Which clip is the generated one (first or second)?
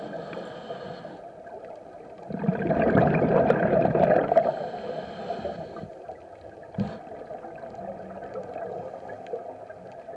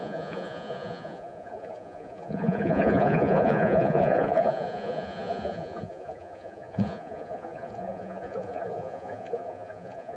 second